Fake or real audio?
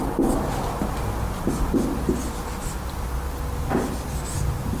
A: real